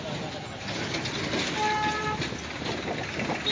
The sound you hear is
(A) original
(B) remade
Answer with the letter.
A